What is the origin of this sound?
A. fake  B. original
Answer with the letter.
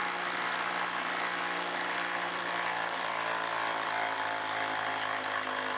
B